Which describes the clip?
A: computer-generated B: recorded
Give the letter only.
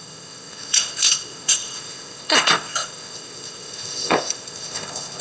A